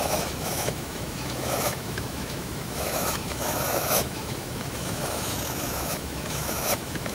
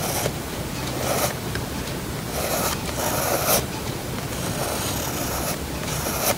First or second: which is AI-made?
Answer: first